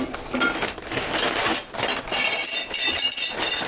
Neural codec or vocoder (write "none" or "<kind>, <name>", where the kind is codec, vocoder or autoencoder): none